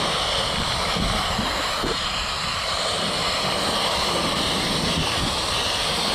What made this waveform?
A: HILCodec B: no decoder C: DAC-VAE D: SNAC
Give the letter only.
B